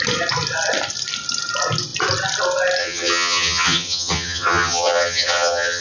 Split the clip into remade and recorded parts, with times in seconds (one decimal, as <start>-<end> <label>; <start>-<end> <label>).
0.0-2.8 recorded; 2.8-5.8 remade